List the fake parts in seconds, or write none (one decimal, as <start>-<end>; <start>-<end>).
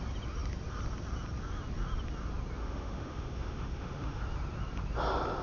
2.6-4.2